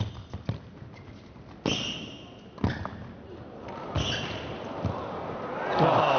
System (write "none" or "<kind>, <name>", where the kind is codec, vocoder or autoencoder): none